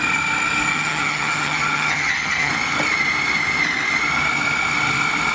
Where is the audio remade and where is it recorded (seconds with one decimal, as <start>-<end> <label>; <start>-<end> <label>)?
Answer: 0.0-0.7 recorded; 0.7-2.5 remade; 2.5-5.3 recorded